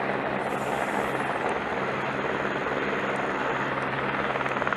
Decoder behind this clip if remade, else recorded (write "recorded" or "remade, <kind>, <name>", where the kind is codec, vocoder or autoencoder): recorded